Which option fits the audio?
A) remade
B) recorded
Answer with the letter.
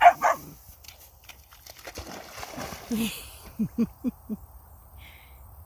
B